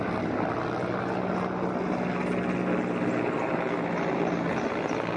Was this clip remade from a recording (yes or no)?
no